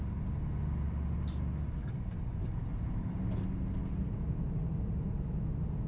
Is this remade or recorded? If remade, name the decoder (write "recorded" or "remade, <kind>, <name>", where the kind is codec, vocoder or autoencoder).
recorded